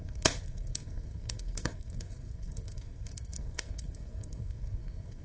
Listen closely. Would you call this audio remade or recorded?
remade